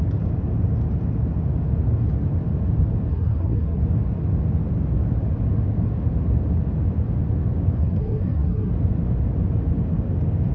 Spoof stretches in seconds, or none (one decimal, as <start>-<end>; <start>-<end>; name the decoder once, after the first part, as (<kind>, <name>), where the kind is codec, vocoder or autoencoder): 3.1-3.8 (codec, SNAC); 7.8-8.7